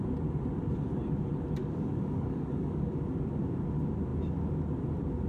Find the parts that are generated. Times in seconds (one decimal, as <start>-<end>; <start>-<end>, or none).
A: 1.6-3.0